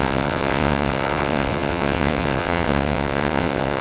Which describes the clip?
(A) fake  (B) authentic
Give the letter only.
A